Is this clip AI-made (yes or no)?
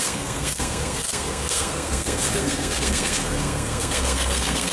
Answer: yes